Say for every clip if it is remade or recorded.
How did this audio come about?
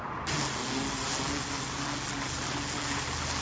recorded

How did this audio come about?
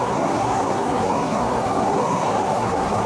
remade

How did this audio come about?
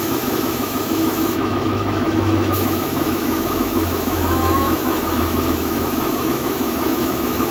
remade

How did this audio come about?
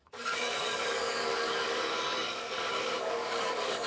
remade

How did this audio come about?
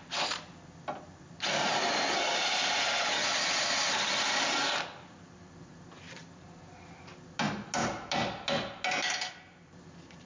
recorded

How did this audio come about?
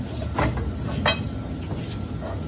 recorded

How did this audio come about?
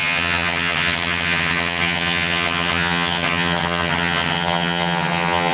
remade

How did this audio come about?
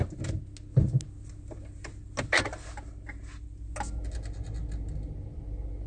recorded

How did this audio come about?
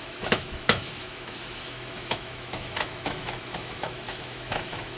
remade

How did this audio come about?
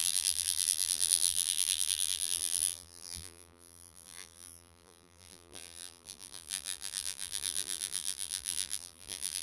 remade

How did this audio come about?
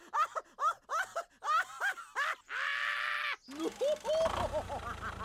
recorded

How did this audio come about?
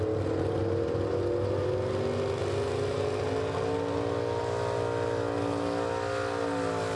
recorded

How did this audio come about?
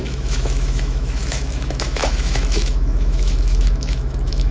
remade